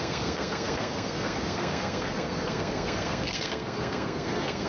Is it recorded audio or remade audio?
remade